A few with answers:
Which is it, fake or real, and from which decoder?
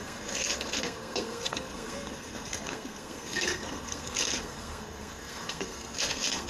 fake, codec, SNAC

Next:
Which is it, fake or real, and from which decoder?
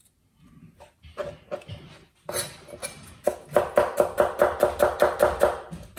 real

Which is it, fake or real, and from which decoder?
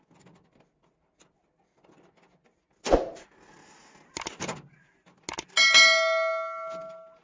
real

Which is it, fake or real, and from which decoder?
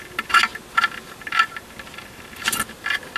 real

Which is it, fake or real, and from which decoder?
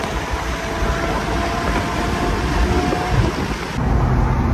real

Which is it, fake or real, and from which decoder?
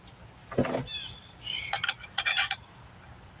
real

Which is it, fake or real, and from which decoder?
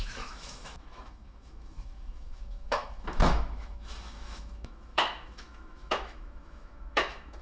fake, autoencoder, DAC-VAE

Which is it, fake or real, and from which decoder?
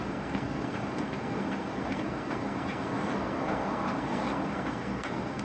fake, codec, SNAC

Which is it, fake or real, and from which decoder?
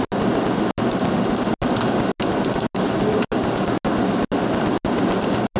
real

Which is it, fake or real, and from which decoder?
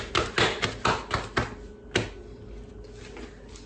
real